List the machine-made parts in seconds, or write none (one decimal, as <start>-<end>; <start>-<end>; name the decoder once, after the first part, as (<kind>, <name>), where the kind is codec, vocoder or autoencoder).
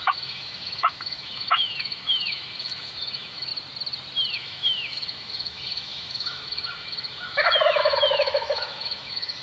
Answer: 0.0-3.5 (autoencoder, DAC-VAE); 4.3-9.4